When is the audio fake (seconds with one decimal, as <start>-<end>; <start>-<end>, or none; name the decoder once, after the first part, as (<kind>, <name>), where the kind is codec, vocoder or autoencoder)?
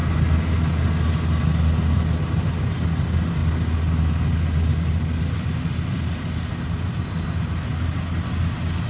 none